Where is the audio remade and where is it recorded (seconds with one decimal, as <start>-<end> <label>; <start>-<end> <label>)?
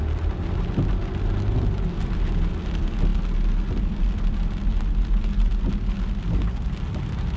0.0-7.4 recorded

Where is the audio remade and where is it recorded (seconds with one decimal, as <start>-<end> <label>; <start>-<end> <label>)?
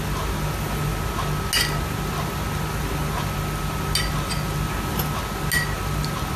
0.0-6.4 recorded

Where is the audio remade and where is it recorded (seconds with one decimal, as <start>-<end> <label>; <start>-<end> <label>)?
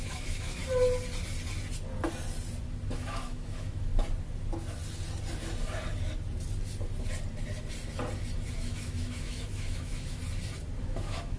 0.0-0.6 remade; 0.6-2.9 recorded; 2.9-3.9 remade; 3.9-8.5 recorded; 8.5-10.2 remade; 10.2-10.8 recorded; 10.8-11.4 remade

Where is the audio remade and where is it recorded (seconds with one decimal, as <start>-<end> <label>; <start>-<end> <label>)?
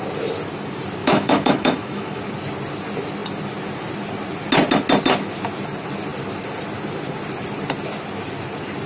0.0-1.0 recorded; 1.0-2.2 remade; 2.2-8.9 recorded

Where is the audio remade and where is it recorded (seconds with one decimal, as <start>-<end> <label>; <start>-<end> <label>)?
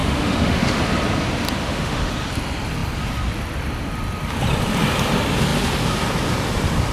0.0-0.8 remade; 0.8-1.6 recorded; 1.6-2.1 remade; 2.1-6.9 recorded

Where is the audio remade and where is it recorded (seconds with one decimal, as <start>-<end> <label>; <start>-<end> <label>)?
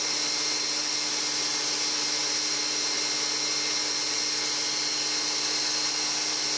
0.0-6.6 recorded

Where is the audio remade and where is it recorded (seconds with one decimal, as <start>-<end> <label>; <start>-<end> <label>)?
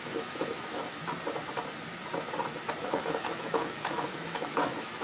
0.0-0.8 remade; 0.8-2.8 recorded; 2.8-5.0 remade